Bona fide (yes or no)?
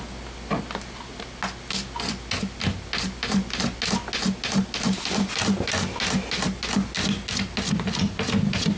yes